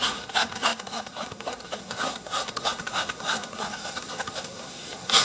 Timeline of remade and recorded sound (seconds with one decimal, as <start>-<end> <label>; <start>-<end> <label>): 0.0-5.2 remade